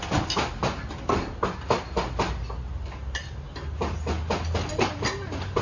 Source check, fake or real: real